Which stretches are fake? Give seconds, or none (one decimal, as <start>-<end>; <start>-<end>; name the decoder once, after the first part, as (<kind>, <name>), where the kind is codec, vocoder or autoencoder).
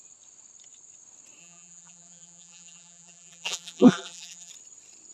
1.4-4.5 (vocoder, BigVGAN v2)